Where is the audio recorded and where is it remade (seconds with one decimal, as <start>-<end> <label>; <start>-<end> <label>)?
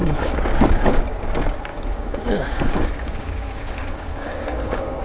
0.0-1.0 remade; 1.0-1.7 recorded; 1.7-5.0 remade